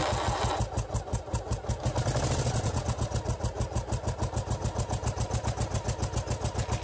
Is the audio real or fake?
real